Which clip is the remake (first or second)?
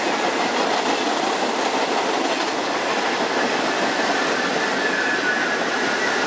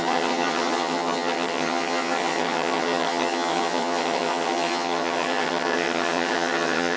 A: second